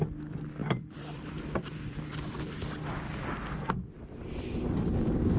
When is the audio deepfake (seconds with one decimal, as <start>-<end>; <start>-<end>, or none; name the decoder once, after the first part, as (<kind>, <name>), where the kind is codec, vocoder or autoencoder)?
0.6-2.4 (vocoder, BigVGAN v2)